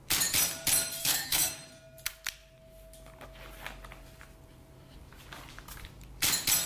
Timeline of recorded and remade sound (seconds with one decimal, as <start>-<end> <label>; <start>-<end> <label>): 0.0-1.0 recorded; 1.0-1.5 remade; 1.5-6.7 recorded